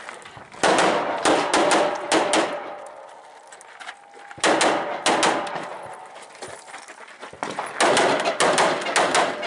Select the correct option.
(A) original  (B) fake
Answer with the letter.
A